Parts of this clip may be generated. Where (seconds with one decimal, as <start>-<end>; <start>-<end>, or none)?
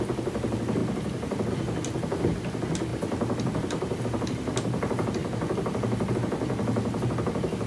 none